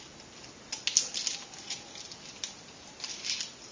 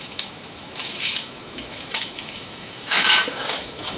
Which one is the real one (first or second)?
first